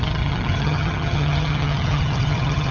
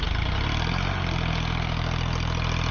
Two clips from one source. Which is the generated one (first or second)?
first